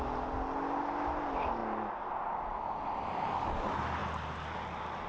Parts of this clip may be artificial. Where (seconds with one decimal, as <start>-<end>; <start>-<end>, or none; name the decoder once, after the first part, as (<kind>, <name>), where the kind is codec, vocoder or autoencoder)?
none